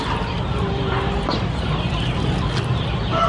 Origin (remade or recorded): recorded